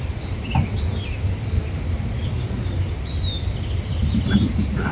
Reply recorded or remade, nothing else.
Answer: recorded